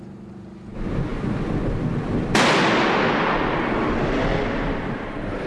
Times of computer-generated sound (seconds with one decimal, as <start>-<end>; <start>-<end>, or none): none